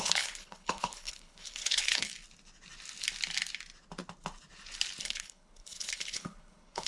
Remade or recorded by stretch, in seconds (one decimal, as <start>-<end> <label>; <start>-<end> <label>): 0.0-2.1 remade; 2.1-5.0 recorded; 5.0-6.9 remade